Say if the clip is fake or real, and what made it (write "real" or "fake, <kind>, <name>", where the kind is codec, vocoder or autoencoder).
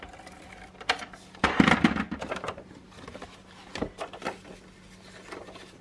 real